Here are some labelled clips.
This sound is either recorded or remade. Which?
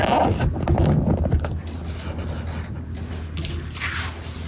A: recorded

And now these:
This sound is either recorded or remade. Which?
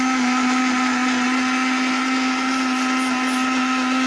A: recorded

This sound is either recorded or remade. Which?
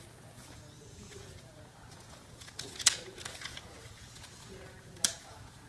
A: remade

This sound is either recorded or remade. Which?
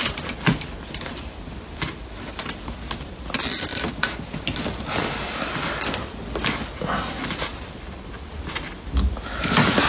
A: recorded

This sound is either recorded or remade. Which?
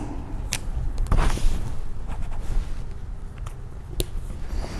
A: recorded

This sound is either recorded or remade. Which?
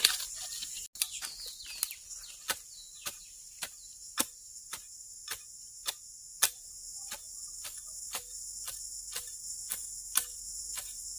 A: recorded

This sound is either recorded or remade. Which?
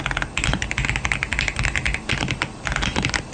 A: recorded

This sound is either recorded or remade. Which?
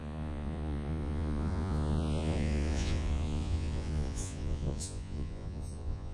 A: remade